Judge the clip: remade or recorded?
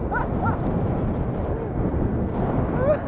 recorded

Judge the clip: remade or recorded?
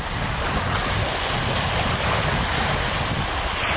recorded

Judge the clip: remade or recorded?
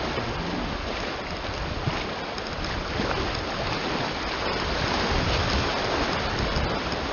recorded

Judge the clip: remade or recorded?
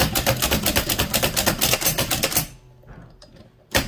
recorded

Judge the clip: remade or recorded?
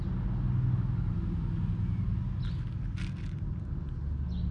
recorded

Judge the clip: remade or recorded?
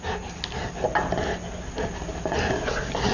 recorded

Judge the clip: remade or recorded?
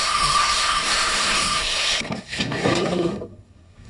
remade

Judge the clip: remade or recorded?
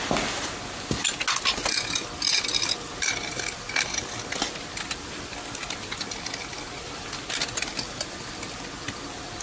recorded